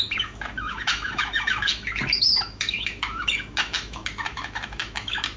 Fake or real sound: fake